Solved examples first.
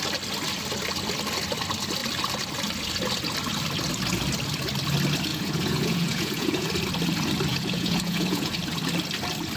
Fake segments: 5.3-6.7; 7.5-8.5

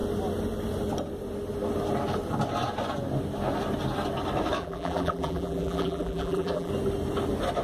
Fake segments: 4.6-6.7

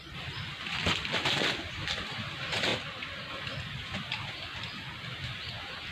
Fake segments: 2.7-3.3

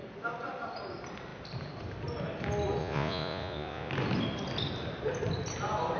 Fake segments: 2.8-3.9

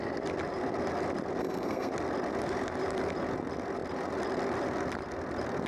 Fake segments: 1.4-1.9

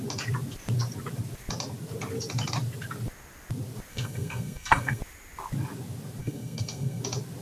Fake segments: 3.9-5.0; 6.2-7.0

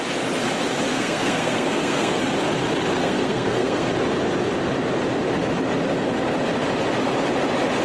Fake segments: 0.9-2.2; 3.0-3.9